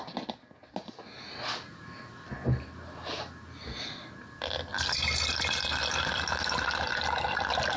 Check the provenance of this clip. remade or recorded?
recorded